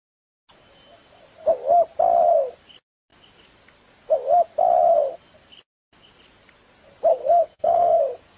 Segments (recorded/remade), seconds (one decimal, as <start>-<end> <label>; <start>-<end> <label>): 0.0-7.1 recorded; 7.1-8.0 remade; 8.0-8.4 recorded

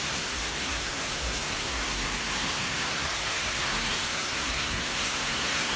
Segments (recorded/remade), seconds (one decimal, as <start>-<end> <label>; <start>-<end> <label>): 0.0-5.8 remade

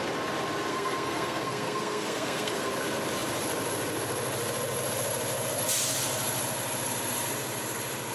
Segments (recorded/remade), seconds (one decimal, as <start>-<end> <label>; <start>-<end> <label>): 0.0-0.7 recorded; 0.7-2.7 remade; 2.7-8.1 recorded